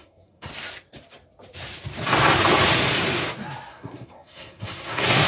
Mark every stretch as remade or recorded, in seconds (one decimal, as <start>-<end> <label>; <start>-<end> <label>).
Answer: 0.0-0.5 remade; 0.5-3.7 recorded; 3.7-5.3 remade